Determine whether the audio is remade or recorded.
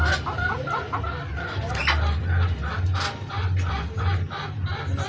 recorded